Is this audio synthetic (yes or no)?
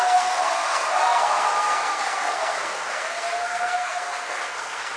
yes